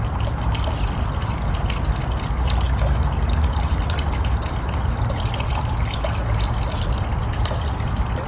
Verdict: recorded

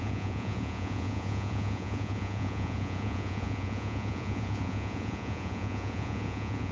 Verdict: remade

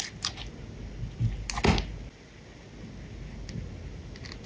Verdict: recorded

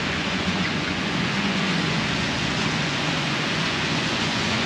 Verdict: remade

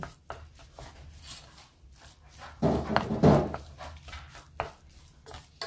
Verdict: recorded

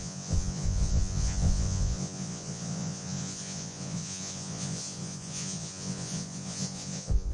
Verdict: remade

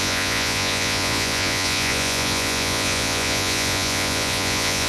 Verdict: remade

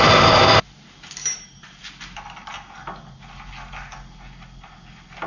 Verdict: recorded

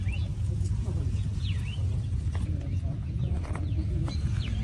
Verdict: remade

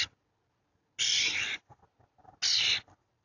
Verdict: recorded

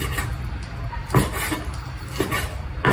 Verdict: recorded